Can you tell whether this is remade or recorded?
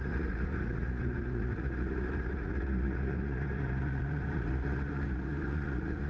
remade